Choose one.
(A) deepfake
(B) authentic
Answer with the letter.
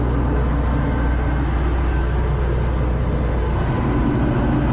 B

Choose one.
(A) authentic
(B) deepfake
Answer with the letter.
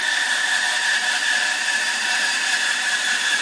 B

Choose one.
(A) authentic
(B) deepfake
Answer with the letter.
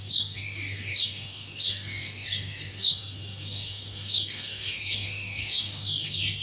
B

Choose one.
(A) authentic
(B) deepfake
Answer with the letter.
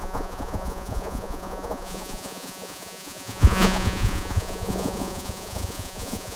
B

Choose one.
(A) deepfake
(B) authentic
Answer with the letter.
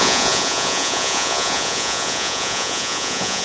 A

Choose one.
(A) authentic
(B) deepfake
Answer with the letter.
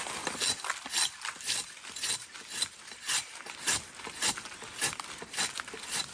A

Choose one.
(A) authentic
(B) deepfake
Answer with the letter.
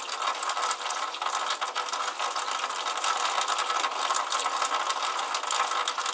A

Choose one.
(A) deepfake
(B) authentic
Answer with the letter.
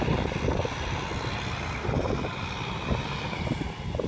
B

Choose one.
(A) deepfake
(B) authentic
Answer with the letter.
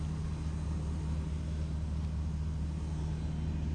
B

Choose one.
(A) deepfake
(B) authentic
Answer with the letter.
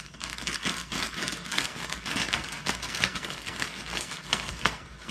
A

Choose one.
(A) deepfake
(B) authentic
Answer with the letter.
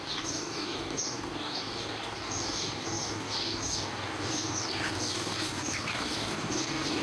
A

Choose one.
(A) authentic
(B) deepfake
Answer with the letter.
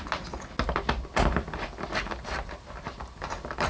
A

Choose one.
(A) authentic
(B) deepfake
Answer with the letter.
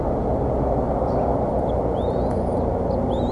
A